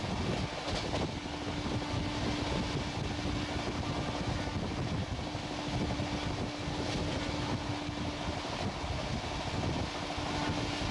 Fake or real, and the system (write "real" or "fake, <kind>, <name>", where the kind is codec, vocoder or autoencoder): real